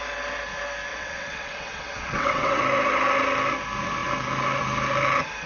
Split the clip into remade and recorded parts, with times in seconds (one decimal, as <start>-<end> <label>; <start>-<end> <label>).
0.0-0.9 recorded; 0.9-2.6 remade; 2.6-5.5 recorded